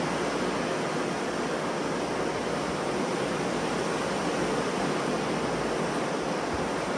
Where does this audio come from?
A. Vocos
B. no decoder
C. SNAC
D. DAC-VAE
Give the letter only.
B